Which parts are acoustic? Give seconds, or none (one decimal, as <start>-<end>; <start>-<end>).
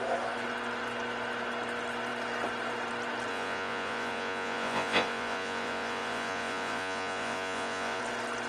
0.0-3.3; 8.0-8.5